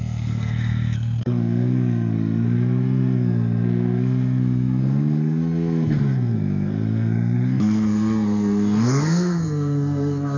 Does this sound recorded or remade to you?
remade